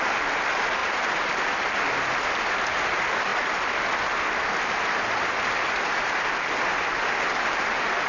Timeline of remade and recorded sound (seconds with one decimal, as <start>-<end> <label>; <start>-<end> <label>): 0.0-8.1 recorded